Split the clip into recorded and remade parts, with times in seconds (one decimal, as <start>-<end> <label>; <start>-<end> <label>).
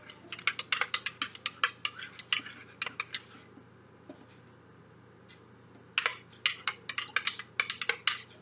0.0-8.4 recorded